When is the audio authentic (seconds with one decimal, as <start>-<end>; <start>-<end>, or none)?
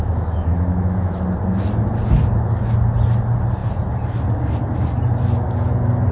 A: 1.2-6.1